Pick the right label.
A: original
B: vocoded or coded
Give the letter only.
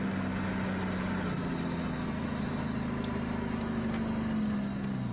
A